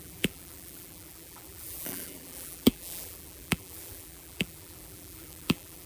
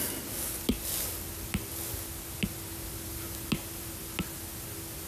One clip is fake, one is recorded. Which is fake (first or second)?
first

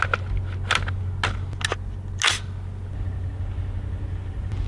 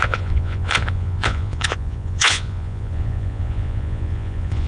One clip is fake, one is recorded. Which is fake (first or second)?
second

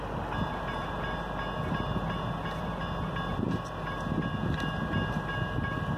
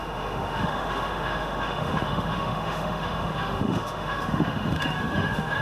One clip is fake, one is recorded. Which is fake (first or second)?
second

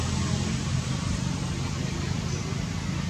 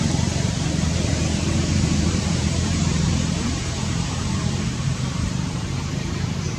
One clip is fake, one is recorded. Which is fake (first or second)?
second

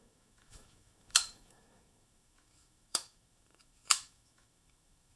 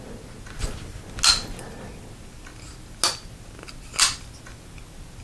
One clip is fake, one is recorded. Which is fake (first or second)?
first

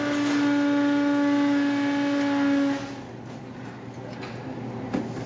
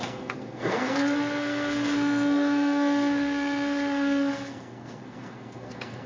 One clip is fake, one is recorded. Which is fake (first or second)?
second